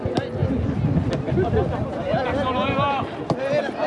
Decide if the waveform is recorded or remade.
recorded